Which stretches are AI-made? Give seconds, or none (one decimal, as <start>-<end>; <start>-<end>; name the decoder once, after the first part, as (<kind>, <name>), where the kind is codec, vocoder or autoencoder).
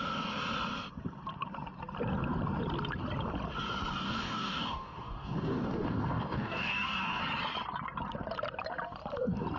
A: 3.9-7.2 (codec, DAC)